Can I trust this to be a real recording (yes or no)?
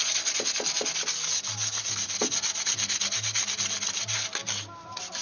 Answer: yes